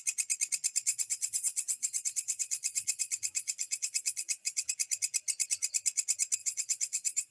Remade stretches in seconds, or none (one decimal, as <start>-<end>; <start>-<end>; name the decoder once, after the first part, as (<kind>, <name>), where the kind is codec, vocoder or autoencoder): 0.9-4.7 (vocoder, Vocos); 6.4-7.3